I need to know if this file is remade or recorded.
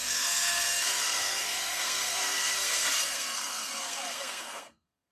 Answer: remade